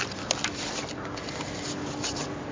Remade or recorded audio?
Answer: recorded